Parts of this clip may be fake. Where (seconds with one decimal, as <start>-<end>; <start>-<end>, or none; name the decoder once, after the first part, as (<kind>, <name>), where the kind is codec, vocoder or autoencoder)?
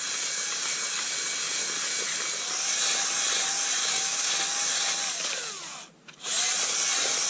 3.8-4.3 (codec, DAC)